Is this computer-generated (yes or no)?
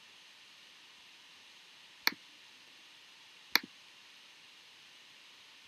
no